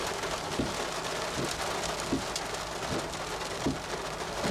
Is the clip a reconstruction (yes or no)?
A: no